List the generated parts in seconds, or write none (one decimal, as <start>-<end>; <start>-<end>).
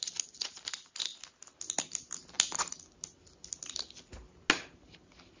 none